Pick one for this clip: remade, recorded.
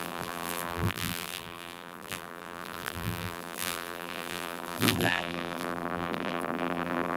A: remade